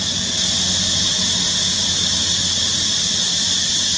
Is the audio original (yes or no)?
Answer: yes